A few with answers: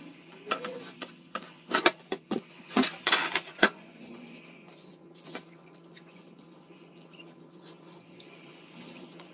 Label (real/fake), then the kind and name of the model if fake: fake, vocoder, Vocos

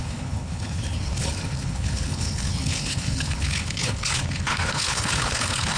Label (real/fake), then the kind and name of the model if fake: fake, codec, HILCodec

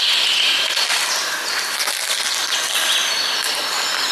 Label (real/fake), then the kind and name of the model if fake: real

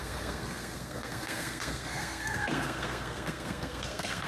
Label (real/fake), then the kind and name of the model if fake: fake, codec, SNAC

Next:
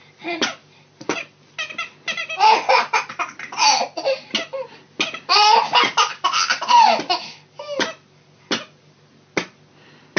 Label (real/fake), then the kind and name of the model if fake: real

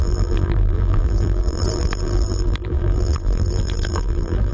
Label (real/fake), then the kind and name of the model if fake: fake, vocoder, BigVGAN v2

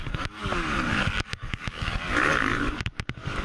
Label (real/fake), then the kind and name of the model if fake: fake, codec, DAC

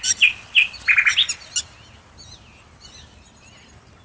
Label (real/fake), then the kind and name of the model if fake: real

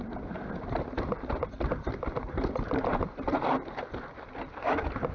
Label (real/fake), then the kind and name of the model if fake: fake, vocoder, BigVGAN v2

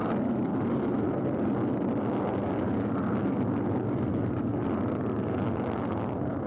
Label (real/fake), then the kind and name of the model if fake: real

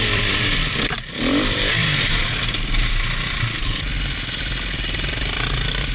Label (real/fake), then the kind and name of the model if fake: fake, vocoder, BigVGAN v2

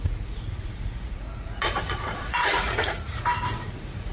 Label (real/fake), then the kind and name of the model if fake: fake, vocoder, Vocos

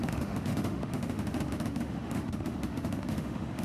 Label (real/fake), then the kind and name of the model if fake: fake, autoencoder, DAC-VAE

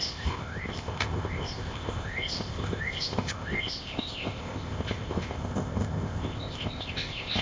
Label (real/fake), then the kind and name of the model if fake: fake, codec, ZipCodec